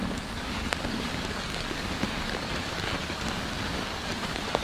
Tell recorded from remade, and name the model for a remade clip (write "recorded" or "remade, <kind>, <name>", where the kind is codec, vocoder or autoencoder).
remade, codec, DAC